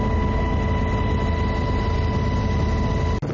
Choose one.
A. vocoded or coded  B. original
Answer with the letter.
B